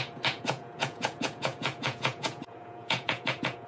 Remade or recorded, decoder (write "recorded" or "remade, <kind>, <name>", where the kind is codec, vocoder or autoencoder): remade, vocoder, Vocos